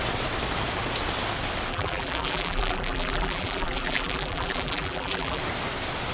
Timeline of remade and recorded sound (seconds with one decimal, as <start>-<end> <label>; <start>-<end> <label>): 0.0-1.7 recorded; 1.7-5.4 remade; 5.4-6.1 recorded